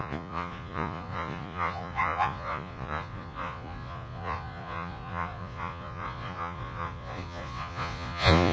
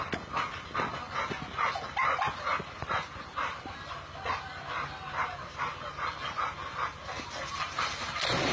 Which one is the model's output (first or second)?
first